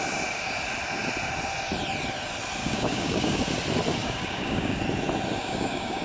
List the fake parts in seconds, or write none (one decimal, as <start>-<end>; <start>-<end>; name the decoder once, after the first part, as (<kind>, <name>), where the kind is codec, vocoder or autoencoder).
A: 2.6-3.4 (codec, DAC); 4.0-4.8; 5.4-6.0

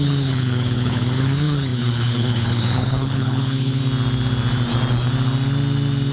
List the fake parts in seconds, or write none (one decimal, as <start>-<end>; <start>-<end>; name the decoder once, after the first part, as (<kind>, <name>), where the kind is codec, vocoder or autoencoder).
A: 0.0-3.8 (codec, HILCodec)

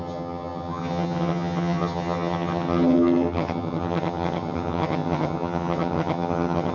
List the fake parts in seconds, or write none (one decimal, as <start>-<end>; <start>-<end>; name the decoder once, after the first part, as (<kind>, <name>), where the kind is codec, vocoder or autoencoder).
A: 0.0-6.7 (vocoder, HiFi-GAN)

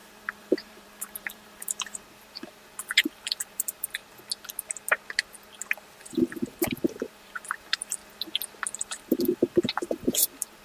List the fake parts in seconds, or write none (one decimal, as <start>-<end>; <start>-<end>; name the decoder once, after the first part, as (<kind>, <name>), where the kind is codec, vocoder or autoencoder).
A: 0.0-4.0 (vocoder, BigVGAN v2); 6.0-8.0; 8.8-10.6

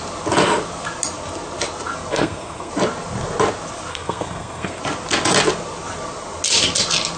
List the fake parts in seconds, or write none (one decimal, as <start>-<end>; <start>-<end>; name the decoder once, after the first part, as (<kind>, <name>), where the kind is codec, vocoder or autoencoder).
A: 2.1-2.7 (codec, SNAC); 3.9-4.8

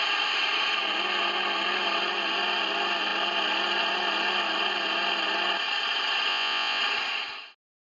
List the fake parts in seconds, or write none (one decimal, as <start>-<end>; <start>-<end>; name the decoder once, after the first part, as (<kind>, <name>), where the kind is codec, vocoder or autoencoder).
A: 6.3-6.8 (vocoder, Vocos)